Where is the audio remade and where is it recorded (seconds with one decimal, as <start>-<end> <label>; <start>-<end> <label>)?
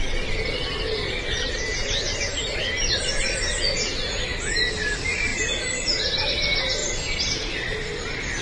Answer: 0.0-1.0 recorded; 1.0-1.5 remade; 1.5-5.3 recorded; 5.3-6.3 remade; 6.3-6.8 recorded; 6.8-8.4 remade